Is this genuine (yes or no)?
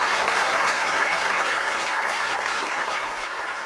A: no